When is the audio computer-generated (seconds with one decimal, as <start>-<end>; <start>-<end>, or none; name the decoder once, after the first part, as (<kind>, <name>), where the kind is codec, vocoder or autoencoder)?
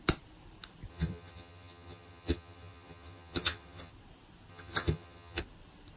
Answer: 0.9-3.9 (vocoder, HiFi-GAN); 4.5-5.4